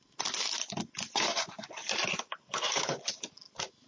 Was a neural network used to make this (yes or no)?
no